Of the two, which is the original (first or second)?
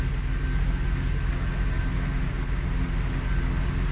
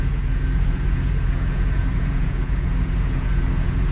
first